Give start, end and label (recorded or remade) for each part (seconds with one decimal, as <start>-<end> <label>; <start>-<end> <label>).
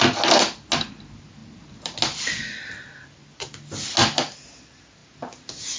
0.0-5.8 recorded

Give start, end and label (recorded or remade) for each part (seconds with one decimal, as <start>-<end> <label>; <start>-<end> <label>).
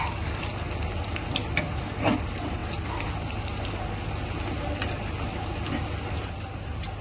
0.0-7.0 recorded